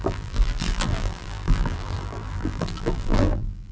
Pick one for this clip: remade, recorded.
remade